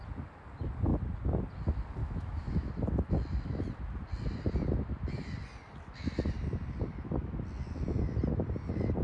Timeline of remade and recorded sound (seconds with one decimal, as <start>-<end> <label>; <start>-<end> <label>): 0.0-2.0 recorded; 2.0-2.7 remade; 2.7-9.0 recorded